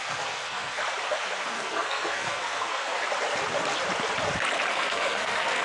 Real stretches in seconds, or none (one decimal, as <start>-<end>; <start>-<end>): 0.8-1.4; 3.0-4.7